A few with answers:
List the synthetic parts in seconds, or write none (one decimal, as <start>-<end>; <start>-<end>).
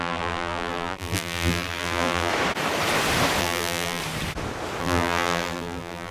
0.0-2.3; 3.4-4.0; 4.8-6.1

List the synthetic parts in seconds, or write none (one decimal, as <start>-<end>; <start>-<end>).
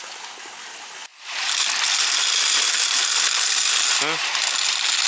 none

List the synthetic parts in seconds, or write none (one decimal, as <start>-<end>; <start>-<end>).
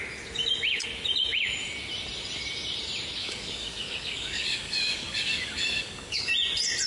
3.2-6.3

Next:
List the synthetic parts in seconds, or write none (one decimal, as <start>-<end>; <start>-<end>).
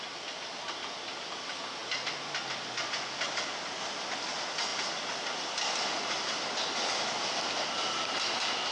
4.7-7.3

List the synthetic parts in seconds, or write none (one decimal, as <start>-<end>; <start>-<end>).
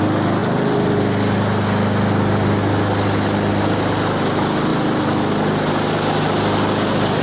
none